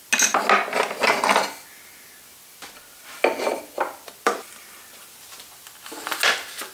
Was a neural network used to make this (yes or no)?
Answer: no